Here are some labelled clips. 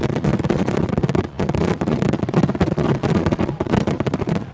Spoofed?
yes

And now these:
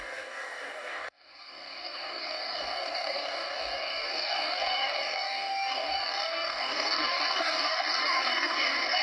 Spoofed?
yes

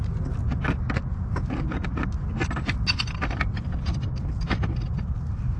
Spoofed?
no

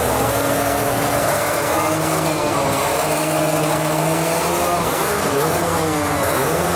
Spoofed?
yes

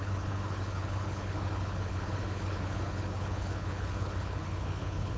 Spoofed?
yes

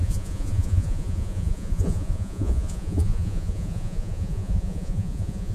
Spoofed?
yes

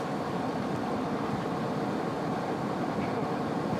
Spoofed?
no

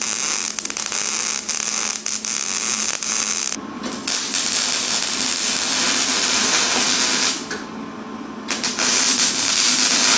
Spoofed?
no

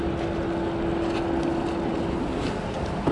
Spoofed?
no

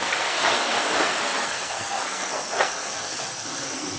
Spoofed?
yes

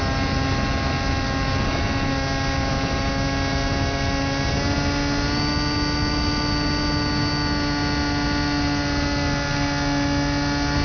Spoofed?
no